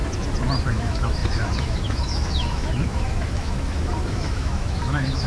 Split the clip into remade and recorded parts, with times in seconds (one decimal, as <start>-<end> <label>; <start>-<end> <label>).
0.0-0.7 recorded; 0.7-5.3 remade